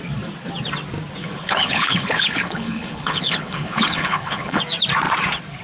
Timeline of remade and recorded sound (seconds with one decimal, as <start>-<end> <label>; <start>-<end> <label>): 0.0-1.2 recorded; 1.2-4.6 remade; 4.6-5.6 recorded